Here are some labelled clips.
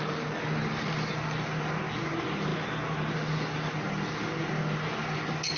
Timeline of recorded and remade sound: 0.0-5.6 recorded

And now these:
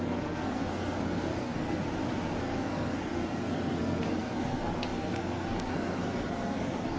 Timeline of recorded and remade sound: 0.0-1.8 remade; 1.8-2.4 recorded; 2.4-7.0 remade